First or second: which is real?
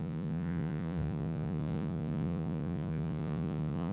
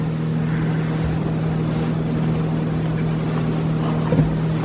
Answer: second